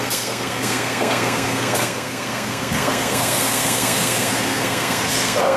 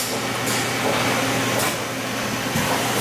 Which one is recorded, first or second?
second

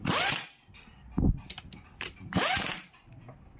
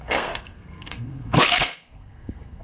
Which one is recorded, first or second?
first